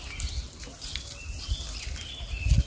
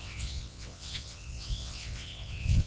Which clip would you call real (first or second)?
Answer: first